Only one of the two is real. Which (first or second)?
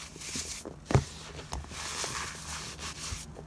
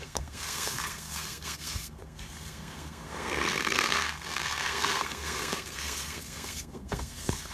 first